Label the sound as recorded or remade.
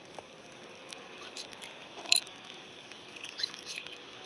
remade